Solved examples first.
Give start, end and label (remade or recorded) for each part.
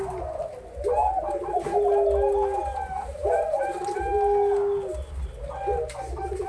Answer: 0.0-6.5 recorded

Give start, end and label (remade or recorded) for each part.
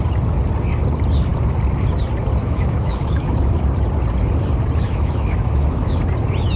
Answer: 0.0-2.4 recorded; 2.4-3.5 remade; 3.5-4.9 recorded; 4.9-6.0 remade; 6.0-6.6 recorded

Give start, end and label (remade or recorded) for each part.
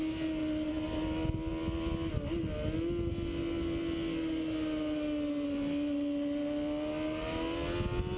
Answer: 0.0-8.2 recorded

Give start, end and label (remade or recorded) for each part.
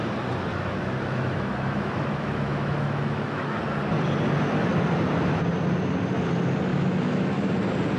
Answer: 0.0-0.5 recorded; 0.5-3.6 remade; 3.6-6.7 recorded; 6.7-7.5 remade; 7.5-8.0 recorded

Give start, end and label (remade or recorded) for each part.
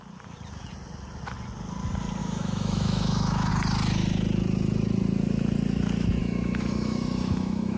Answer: 0.0-2.2 recorded; 2.2-3.5 remade; 3.5-6.2 recorded; 6.2-7.8 remade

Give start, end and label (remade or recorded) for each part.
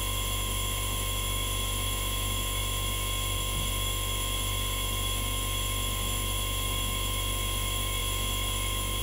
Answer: 0.0-9.0 remade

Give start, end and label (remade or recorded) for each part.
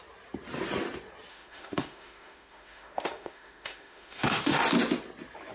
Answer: 0.0-1.3 recorded; 1.3-4.6 remade; 4.6-5.5 recorded